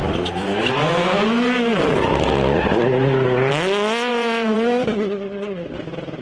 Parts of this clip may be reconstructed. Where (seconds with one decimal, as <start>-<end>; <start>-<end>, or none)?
4.1-5.7